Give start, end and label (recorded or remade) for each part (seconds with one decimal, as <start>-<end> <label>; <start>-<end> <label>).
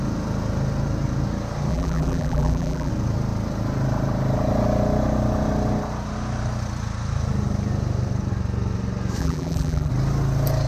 0.0-1.7 recorded; 1.7-2.9 remade; 2.9-9.2 recorded; 9.2-9.9 remade; 9.9-10.7 recorded